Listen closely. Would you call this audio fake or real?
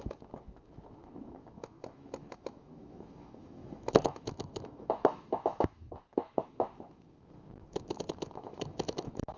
fake